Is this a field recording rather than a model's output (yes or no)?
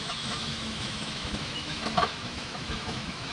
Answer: no